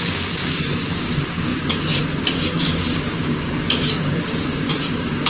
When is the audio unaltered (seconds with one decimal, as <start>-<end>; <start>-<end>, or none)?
none